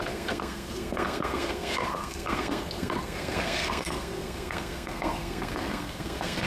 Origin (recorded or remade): remade